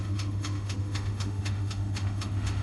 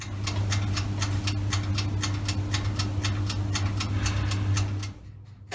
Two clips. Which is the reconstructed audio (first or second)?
first